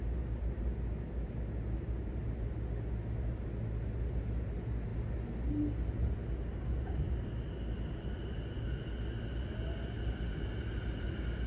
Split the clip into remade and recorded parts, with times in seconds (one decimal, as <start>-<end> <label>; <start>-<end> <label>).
0.0-11.5 recorded